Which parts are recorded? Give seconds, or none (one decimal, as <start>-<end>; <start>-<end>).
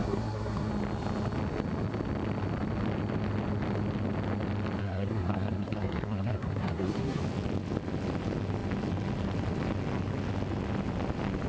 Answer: 0.7-4.8; 7.2-11.5